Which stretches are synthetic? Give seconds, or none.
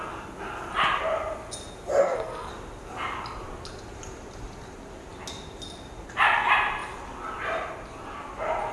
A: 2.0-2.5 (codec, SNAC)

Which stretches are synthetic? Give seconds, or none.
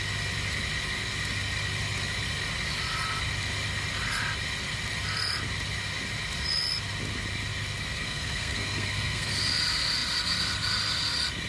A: 8.0-9.3 (codec, SNAC)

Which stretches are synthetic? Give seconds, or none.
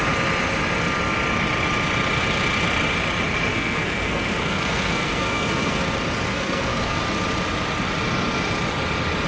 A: 3.5-5.8 (codec, SNAC); 6.3-7.0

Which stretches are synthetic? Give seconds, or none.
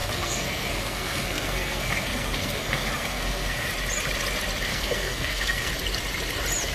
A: 0.0-3.7 (codec, SNAC); 4.7-5.7